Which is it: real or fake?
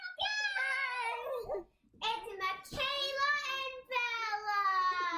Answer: real